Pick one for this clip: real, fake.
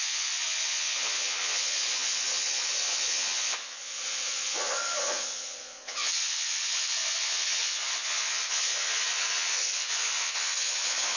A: fake